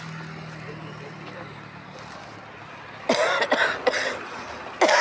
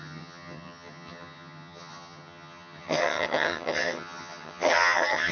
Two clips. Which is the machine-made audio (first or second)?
second